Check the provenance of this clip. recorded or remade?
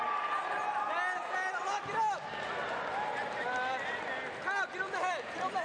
recorded